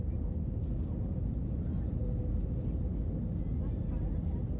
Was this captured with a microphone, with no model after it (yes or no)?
yes